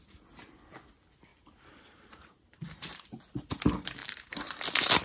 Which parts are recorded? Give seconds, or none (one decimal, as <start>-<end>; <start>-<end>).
0.0-1.3; 3.0-4.0; 4.6-5.0